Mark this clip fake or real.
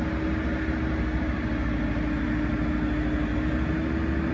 real